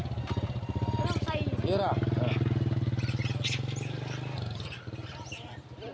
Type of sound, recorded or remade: recorded